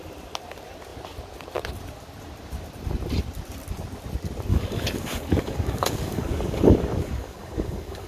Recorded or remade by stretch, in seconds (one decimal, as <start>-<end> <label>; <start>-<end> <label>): 0.0-4.5 recorded; 4.5-8.1 remade